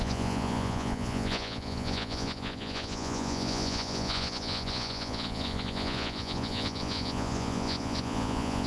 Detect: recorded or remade remade